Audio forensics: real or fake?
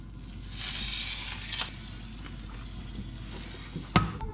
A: real